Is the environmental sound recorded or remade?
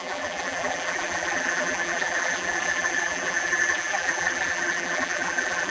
remade